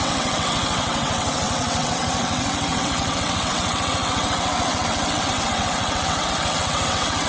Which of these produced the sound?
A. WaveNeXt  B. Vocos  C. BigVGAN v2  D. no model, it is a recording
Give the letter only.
A